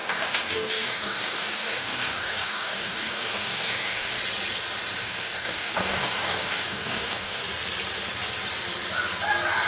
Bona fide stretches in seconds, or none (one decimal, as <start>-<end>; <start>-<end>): 4.2-5.0; 7.4-9.7